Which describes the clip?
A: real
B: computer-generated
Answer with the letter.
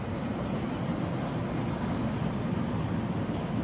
A